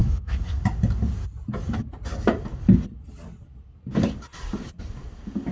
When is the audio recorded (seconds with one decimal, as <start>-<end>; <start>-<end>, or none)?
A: 0.6-5.5